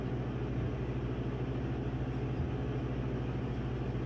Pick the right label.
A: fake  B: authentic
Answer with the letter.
B